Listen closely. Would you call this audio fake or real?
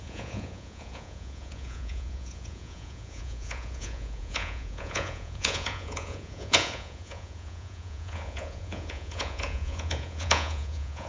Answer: fake